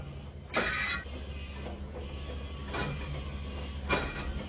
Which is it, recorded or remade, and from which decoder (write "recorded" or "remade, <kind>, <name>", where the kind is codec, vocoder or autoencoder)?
recorded